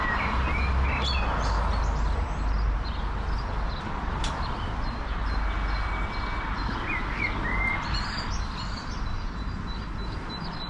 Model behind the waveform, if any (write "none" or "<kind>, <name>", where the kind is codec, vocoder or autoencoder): none